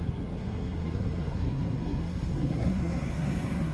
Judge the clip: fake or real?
fake